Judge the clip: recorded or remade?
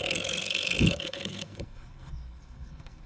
remade